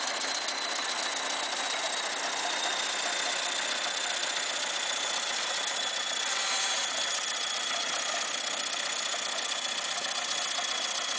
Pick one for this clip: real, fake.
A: real